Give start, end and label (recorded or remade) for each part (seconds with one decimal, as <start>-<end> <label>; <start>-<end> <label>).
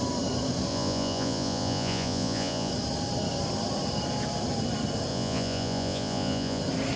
0.0-0.7 recorded; 0.7-2.7 remade; 2.7-5.1 recorded; 5.1-6.6 remade; 6.6-7.0 recorded